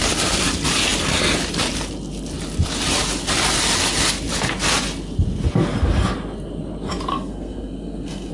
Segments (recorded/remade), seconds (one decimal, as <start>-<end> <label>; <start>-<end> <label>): 0.0-7.1 recorded; 7.1-8.3 remade